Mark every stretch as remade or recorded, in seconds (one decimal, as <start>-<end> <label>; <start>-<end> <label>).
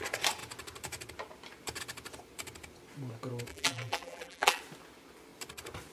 0.0-3.5 recorded; 3.5-4.6 remade; 4.6-5.9 recorded